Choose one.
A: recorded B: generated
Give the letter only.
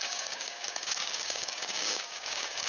B